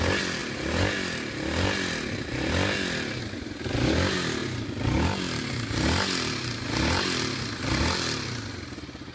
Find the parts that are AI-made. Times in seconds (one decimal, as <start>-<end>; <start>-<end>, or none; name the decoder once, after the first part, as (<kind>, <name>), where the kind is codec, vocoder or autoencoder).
none

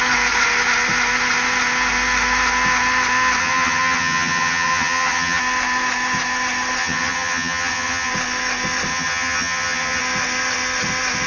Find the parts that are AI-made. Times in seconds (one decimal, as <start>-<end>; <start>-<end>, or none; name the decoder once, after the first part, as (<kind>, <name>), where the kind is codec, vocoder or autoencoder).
3.4-5.4 (vocoder, HiFi-GAN); 6.8-8.1; 8.9-10.0